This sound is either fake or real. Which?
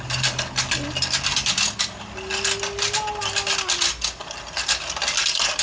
real